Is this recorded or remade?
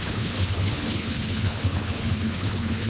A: remade